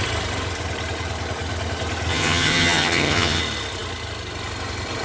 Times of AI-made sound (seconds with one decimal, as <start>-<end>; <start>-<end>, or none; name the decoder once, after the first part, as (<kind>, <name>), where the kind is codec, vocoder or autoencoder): 2.1-3.4 (vocoder, HiFi-GAN)